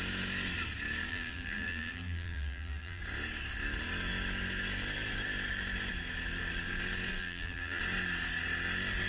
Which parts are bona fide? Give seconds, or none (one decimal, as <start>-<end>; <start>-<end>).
0.0-1.1; 3.0-7.1; 7.8-9.1